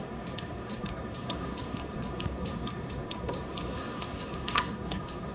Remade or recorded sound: remade